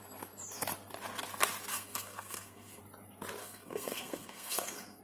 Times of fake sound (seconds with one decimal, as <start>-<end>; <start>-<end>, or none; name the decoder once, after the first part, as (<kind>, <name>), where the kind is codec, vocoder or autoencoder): 1.7-2.8 (codec, SNAC); 3.4-5.0